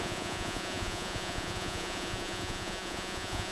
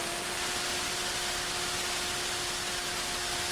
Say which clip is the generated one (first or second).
first